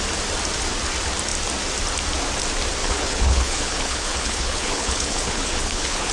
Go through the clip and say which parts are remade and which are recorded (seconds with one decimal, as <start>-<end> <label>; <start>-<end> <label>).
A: 0.0-2.8 recorded; 2.8-6.1 remade